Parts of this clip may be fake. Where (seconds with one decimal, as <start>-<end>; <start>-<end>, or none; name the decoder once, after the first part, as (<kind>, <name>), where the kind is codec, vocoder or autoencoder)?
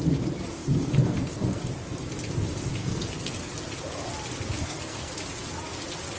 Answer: 0.6-1.6 (codec, SNAC); 2.8-3.5; 4.6-5.1